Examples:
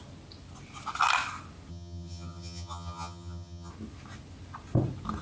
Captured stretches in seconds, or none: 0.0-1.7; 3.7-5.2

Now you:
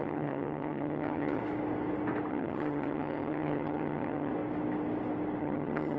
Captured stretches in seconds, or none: 1.4-2.3; 4.3-5.4

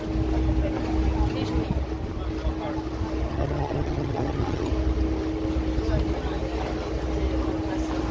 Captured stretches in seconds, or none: 0.0-3.3; 4.7-8.1

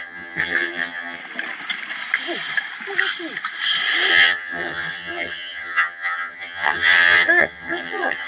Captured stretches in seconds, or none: 1.2-4.1

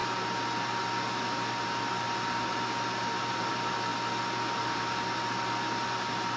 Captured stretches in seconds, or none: 0.0-6.4

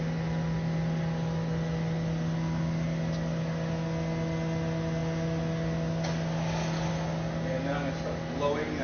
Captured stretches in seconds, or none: 0.0-8.8